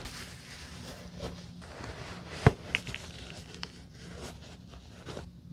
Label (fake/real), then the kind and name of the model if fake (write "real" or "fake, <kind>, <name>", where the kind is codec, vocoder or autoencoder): real